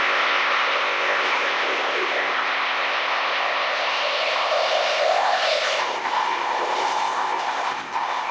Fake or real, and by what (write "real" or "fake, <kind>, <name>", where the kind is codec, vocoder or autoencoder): fake, codec, ZipCodec